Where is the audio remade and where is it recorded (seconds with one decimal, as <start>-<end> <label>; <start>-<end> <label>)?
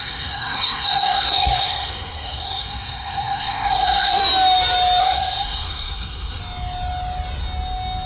0.0-4.2 remade; 4.2-5.0 recorded; 5.0-6.4 remade; 6.4-8.1 recorded